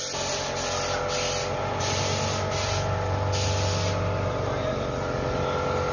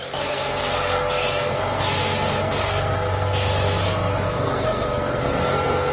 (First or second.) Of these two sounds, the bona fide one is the first